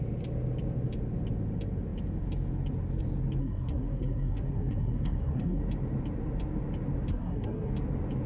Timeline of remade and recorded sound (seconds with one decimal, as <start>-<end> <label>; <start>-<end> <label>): 0.0-3.4 recorded; 3.4-5.6 remade; 5.6-7.1 recorded; 7.1-7.7 remade; 7.7-8.3 recorded